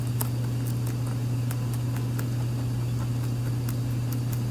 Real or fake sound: real